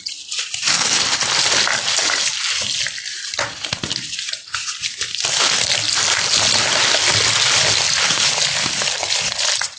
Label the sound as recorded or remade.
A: recorded